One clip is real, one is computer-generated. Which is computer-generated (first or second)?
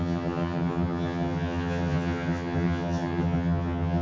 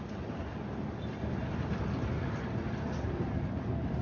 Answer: first